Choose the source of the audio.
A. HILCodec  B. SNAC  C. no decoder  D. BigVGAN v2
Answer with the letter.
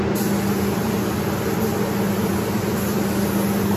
C